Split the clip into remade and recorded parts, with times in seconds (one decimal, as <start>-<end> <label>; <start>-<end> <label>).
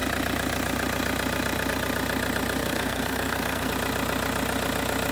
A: 0.0-2.6 recorded; 2.6-3.7 remade; 3.7-5.1 recorded